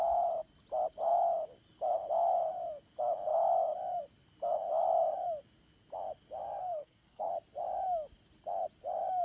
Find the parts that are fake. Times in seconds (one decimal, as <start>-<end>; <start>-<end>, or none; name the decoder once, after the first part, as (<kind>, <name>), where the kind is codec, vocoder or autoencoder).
6.6-7.3 (codec, SNAC)